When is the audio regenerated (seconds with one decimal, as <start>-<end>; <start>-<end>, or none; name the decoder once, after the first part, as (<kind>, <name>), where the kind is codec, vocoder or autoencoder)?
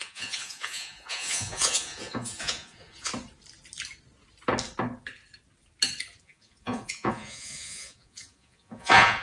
0.0-3.1 (vocoder, Vocos); 6.2-9.2